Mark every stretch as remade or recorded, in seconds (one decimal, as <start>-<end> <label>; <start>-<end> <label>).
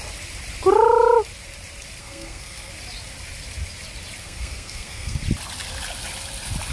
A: 0.0-2.0 recorded; 2.0-2.7 remade; 2.7-4.2 recorded; 4.2-5.2 remade; 5.2-6.7 recorded